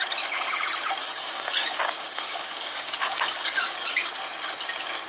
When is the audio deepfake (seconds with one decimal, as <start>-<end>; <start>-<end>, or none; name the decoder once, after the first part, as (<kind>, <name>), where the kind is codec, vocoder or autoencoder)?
1.0-4.1 (codec, DAC)